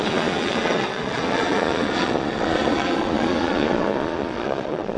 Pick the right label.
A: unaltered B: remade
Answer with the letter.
B